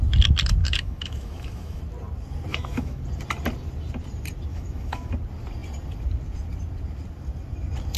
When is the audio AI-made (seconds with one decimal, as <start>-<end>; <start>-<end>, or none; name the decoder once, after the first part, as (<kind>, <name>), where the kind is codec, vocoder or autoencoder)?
0.6-1.8 (autoencoder, DAC-VAE); 2.5-3.0; 4.5-5.1